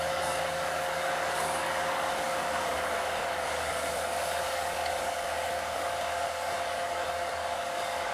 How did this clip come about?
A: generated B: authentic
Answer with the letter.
A